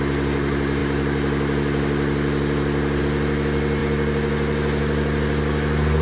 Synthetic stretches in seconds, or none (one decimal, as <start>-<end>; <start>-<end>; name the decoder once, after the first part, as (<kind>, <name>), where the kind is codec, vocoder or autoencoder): none